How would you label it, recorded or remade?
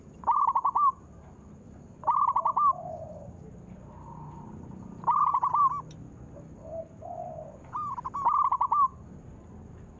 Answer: recorded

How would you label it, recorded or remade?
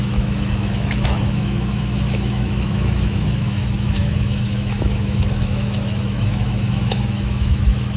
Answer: remade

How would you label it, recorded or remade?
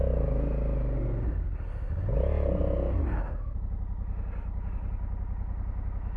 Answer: recorded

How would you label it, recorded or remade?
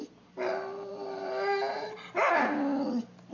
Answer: recorded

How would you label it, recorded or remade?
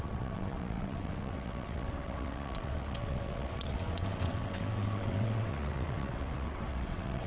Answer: remade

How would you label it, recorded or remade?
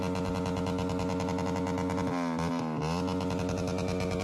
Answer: recorded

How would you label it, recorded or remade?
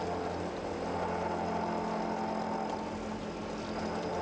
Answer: recorded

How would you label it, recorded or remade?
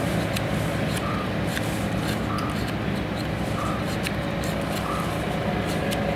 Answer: recorded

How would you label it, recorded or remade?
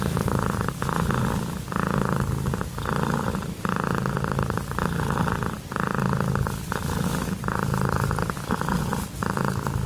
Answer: recorded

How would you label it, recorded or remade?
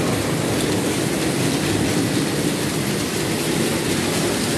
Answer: recorded